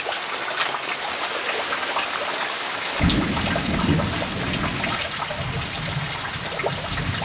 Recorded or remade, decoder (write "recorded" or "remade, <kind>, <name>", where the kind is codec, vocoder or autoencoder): recorded